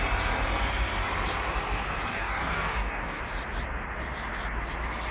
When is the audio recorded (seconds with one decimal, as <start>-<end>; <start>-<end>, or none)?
0.0-2.1; 3.2-5.1